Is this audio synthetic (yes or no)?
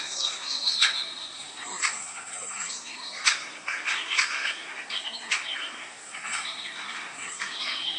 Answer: yes